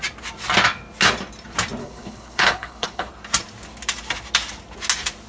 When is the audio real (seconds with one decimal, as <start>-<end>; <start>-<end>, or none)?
0.0-1.8; 3.1-5.3